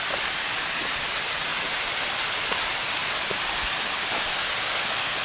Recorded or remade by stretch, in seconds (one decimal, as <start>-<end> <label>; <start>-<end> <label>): 0.0-1.5 recorded; 1.5-2.1 remade; 2.1-3.0 recorded; 3.0-5.2 remade